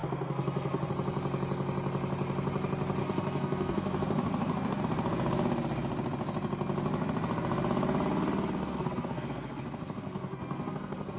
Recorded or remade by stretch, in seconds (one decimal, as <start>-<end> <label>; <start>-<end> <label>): 0.0-0.9 remade; 0.9-3.0 recorded; 3.0-4.8 remade; 4.8-8.6 recorded; 8.6-11.2 remade